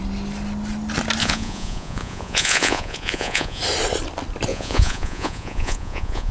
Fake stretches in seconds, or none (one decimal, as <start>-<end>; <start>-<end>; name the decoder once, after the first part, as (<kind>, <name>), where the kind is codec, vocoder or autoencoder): 1.2-3.6 (vocoder, Vocos); 4.5-6.3